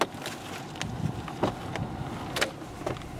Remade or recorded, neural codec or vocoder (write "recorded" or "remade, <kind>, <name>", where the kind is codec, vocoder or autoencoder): recorded